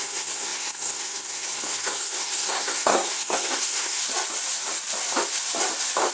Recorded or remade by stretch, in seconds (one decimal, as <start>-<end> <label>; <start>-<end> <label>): 0.0-4.0 remade; 4.0-6.1 recorded